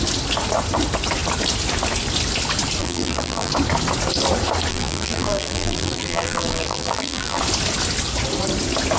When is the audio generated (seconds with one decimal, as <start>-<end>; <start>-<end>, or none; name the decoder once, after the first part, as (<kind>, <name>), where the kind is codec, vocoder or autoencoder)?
2.8-3.5 (vocoder, BigVGAN v2); 4.7-7.4